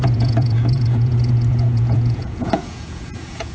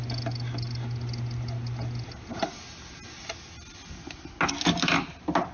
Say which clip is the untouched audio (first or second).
second